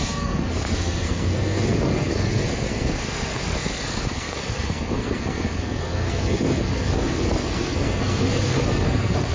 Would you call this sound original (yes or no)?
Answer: no